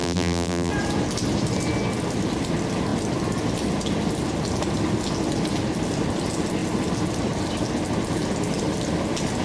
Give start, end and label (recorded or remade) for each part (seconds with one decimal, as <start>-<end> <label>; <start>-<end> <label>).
0.0-0.7 remade; 0.7-9.4 recorded